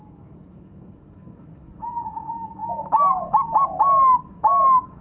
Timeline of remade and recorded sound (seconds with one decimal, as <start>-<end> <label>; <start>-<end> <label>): 0.0-5.0 remade